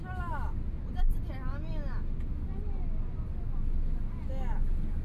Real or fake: real